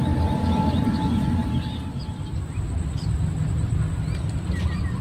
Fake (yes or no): no